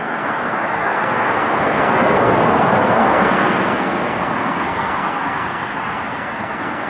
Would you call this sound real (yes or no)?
no